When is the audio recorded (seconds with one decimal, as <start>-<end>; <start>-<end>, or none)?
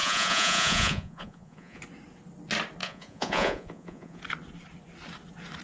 1.8-2.8; 4.2-5.6